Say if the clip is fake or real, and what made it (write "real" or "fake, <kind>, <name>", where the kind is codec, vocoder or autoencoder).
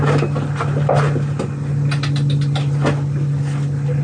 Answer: real